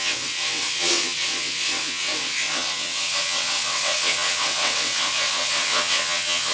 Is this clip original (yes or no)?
no